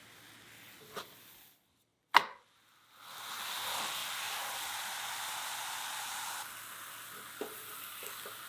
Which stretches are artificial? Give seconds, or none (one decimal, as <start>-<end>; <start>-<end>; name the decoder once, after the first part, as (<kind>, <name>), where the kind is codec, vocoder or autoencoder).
none